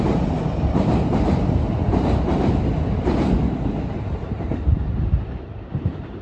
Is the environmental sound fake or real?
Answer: fake